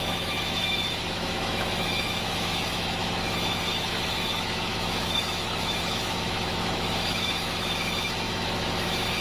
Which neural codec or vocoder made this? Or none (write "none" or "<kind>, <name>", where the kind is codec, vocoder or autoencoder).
autoencoder, DAC-VAE